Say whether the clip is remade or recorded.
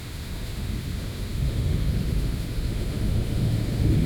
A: remade